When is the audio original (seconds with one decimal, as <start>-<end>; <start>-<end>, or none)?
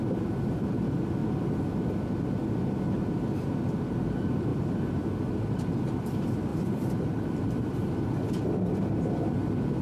0.0-6.5; 8.1-9.8